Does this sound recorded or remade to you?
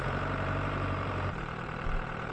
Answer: remade